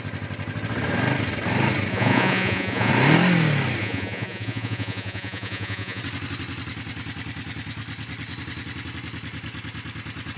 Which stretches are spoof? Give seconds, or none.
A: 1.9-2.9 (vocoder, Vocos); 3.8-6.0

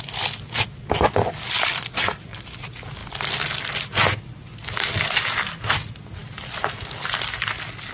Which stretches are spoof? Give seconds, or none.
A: 3.0-3.8 (vocoder, BigVGAN v2)

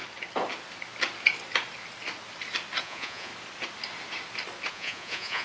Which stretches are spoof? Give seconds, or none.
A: 2.8-3.3 (vocoder, Vocos); 4.7-5.4

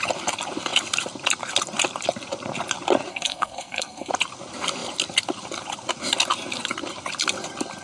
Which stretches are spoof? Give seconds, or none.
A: 3.1-4.1 (codec, SNAC)

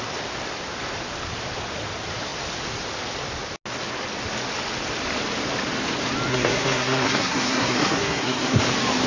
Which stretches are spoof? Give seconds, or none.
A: 6.3-8.6 (codec, SNAC)

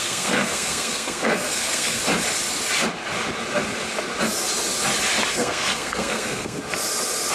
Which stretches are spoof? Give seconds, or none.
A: 0.0-2.0 (codec, SNAC); 5.3-6.6

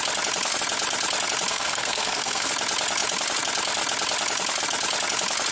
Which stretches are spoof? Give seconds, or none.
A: 1.5-2.5 (codec, SNAC)